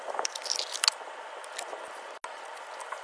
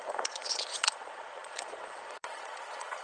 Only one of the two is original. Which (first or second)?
first